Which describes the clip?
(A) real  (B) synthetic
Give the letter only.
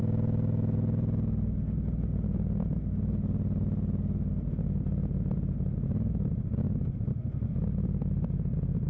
A